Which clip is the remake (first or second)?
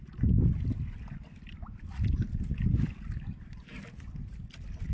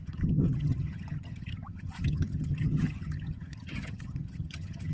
second